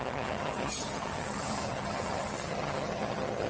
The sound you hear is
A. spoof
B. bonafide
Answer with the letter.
A